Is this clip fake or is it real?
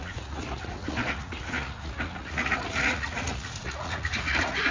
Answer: fake